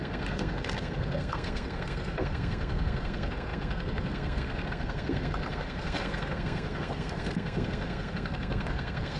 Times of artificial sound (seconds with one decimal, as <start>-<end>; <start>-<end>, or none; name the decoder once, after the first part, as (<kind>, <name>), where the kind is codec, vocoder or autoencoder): 0.0-9.2 (codec, SNAC)